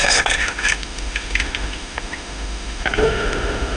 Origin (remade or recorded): remade